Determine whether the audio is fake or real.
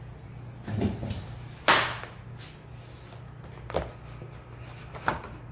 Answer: real